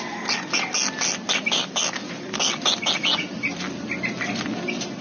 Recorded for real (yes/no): yes